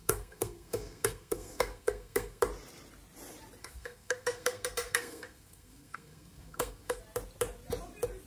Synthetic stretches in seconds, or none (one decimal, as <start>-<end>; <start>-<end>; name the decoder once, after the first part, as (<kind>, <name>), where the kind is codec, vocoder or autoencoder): 0.0-2.4 (codec, SNAC); 3.6-7.0